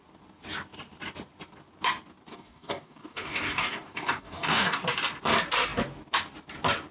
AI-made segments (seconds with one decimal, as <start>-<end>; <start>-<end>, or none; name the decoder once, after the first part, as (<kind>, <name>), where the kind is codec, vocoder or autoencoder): 2.3-4.8 (codec, DAC)